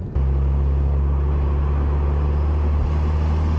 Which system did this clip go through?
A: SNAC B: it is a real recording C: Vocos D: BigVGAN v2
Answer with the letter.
B